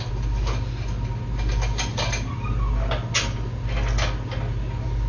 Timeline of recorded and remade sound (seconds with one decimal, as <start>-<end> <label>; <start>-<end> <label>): 0.0-5.1 recorded